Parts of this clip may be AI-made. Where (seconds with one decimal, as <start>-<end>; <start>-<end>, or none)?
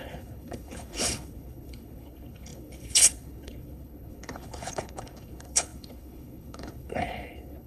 0.0-7.7